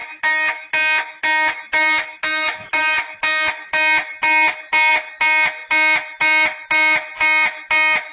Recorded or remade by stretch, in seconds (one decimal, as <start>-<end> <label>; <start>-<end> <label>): 0.0-8.1 recorded